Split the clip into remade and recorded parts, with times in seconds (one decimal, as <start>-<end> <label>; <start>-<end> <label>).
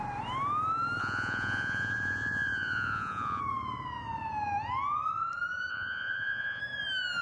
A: 0.0-1.0 recorded; 1.0-3.4 remade; 3.4-5.7 recorded; 5.7-6.6 remade; 6.6-7.2 recorded